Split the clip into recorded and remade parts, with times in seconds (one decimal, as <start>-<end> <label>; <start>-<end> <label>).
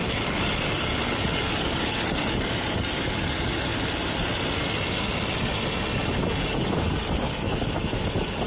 0.0-3.7 remade; 3.7-6.4 recorded; 6.4-8.5 remade